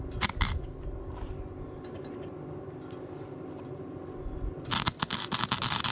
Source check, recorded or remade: recorded